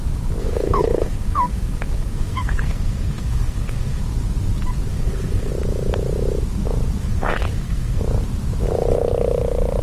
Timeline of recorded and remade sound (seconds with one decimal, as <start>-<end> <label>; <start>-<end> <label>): 0.0-0.4 recorded; 0.4-4.0 remade; 4.0-4.9 recorded; 4.9-5.5 remade; 5.5-7.0 recorded; 7.0-8.0 remade; 8.0-9.8 recorded